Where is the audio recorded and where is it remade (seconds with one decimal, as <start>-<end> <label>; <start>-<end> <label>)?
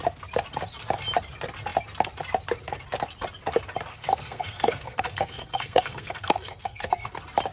0.0-3.9 recorded; 3.9-7.1 remade; 7.1-7.5 recorded